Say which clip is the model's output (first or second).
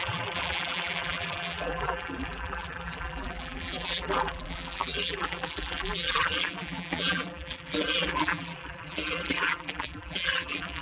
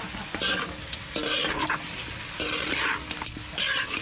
first